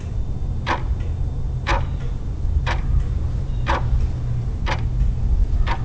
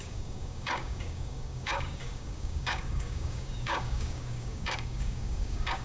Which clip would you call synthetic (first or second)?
second